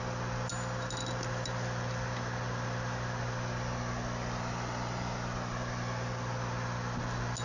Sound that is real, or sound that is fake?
real